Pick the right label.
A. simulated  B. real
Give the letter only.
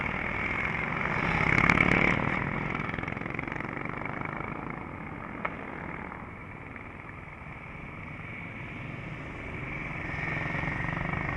B